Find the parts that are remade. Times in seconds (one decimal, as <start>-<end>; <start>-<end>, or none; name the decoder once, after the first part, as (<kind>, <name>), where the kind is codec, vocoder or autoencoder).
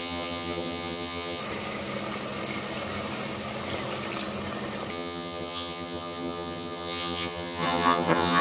0.0-1.4 (vocoder, HiFi-GAN); 4.9-8.4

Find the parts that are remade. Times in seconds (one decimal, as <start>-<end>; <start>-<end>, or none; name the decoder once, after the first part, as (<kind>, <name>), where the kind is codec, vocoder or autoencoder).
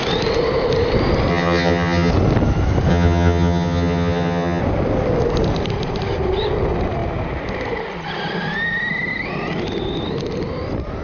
1.3-2.1 (vocoder, HiFi-GAN); 2.9-4.6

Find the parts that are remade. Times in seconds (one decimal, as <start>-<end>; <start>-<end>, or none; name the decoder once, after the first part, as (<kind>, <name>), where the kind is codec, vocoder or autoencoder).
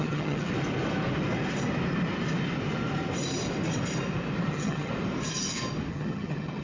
0.0-0.5 (vocoder, HiFi-GAN); 4.5-4.9; 5.9-6.6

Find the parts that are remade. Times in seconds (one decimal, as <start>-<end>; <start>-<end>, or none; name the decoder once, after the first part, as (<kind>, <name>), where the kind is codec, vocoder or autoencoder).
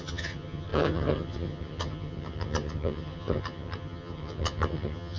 0.0-5.2 (vocoder, HiFi-GAN)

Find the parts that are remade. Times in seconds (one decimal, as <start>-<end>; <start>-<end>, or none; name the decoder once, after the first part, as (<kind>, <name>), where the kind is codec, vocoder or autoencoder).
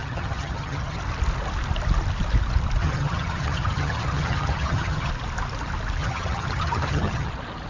0.0-1.0 (vocoder, HiFi-GAN); 2.8-5.1; 6.0-7.3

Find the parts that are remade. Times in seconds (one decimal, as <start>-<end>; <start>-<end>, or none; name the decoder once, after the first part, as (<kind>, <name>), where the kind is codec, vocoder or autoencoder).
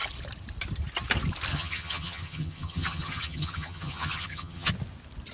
1.5-4.7 (vocoder, HiFi-GAN)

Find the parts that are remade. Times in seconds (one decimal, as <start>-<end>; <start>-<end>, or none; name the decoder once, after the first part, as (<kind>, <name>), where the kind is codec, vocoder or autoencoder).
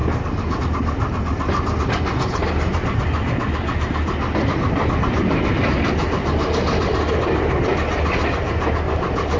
none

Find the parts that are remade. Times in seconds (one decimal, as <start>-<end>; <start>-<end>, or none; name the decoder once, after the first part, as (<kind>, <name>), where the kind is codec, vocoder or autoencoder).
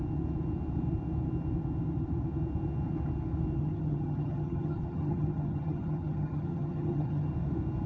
3.6-7.3 (vocoder, HiFi-GAN)